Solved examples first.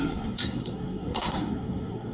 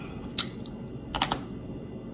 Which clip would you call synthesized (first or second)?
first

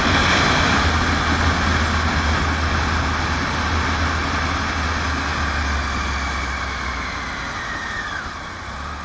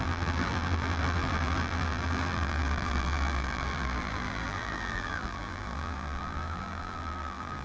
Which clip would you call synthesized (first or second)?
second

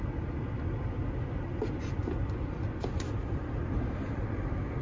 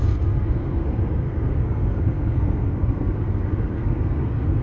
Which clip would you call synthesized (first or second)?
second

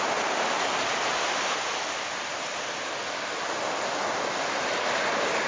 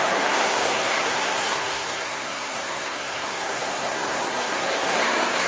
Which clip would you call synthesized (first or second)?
second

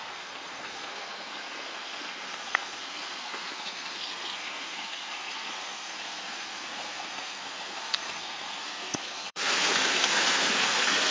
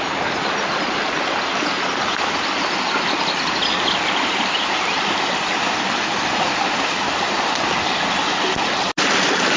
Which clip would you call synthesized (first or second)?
first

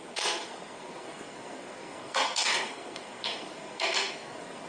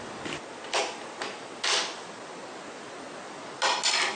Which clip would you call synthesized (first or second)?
first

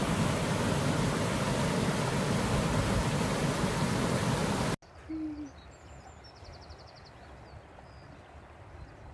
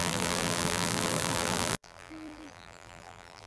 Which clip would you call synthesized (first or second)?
second